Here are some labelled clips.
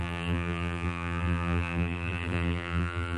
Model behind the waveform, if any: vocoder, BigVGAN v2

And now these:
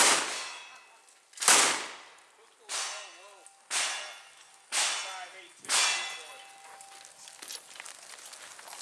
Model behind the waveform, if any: none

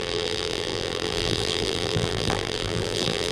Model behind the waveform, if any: vocoder, BigVGAN v2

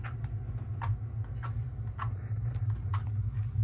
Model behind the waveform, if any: none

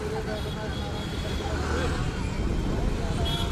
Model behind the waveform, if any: none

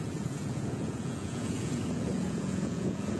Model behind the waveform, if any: vocoder, Vocos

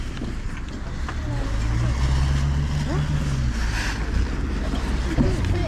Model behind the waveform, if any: none